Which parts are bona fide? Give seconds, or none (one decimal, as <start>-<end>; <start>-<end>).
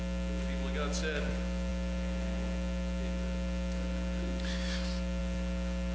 0.0-5.9